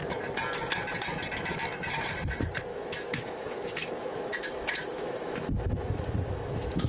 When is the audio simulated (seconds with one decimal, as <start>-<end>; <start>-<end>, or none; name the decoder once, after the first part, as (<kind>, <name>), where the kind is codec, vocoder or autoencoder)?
2.7-6.9 (autoencoder, DAC-VAE)